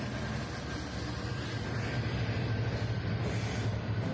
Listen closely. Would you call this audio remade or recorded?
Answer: recorded